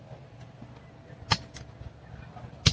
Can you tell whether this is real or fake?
real